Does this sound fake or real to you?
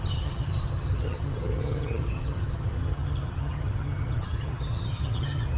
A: fake